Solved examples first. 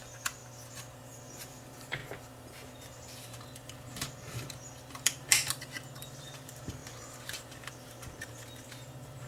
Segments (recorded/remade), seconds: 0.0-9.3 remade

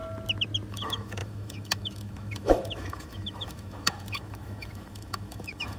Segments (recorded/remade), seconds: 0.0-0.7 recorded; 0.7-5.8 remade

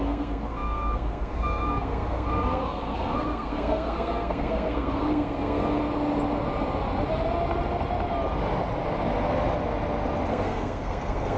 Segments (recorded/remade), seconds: 0.0-5.8 remade; 5.8-10.3 recorded; 10.3-11.4 remade

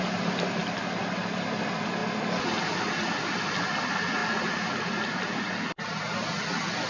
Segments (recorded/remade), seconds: 0.0-4.2 recorded; 4.2-5.2 remade; 5.2-6.9 recorded